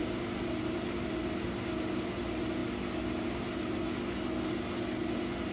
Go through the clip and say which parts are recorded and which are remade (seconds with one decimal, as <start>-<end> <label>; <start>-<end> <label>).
0.0-5.5 recorded